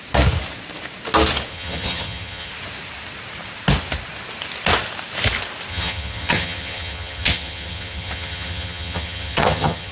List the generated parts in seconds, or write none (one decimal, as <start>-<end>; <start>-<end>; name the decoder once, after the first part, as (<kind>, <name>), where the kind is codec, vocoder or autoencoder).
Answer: 1.5-2.5 (vocoder, HiFi-GAN); 5.7-9.9